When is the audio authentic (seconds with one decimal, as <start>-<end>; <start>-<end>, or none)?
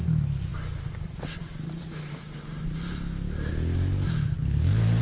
0.0-5.0